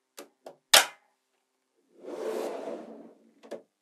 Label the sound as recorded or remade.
recorded